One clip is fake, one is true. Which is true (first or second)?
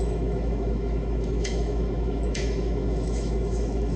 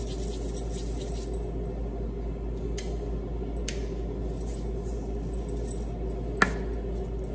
second